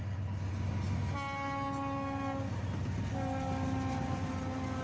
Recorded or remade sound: recorded